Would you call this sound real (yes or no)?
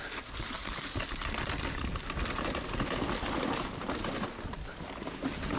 yes